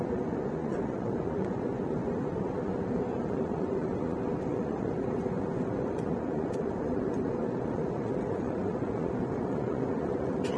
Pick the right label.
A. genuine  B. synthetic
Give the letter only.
B